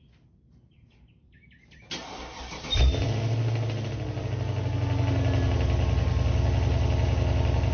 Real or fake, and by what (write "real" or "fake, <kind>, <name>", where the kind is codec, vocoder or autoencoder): real